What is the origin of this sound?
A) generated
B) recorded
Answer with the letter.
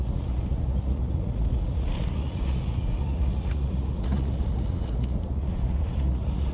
A